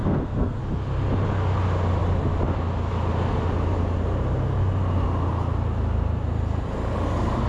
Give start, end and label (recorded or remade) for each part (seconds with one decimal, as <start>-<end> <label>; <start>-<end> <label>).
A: 0.0-0.6 remade; 0.6-7.5 recorded